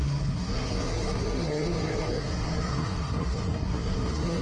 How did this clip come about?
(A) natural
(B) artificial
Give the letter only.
B